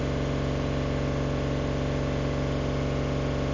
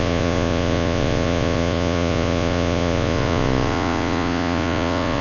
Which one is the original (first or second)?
first